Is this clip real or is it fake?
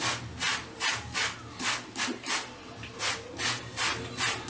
real